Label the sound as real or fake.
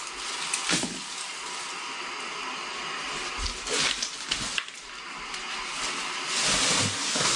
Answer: real